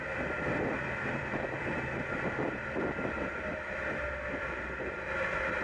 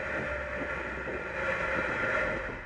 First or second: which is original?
second